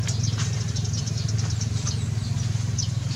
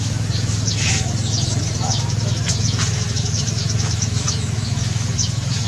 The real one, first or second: first